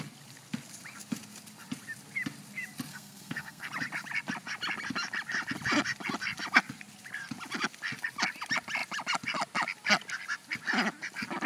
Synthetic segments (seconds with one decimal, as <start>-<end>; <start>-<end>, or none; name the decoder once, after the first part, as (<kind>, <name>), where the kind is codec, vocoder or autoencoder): 2.9-3.7 (codec, SNAC)

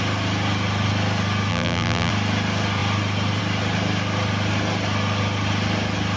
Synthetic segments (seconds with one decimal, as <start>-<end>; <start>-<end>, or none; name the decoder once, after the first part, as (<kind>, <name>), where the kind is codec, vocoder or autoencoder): 1.5-2.1 (vocoder, BigVGAN v2)

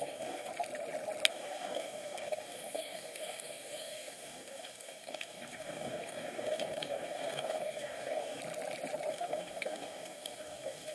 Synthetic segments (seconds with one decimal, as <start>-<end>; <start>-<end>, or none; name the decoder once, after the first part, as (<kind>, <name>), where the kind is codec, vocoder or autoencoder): 0.0-0.5 (codec, DAC); 1.3-8.4; 9.1-10.9

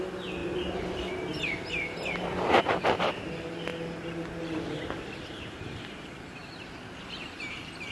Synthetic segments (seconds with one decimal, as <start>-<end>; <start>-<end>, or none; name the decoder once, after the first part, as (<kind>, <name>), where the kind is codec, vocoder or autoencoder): none

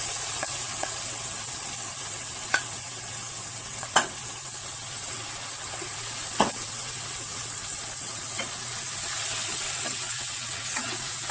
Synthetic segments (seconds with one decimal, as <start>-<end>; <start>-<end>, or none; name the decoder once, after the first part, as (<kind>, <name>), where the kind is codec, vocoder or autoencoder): 0.0-11.3 (vocoder, WaveNeXt)